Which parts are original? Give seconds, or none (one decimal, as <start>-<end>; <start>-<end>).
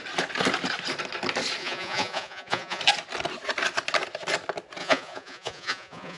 0.0-1.6; 2.8-4.8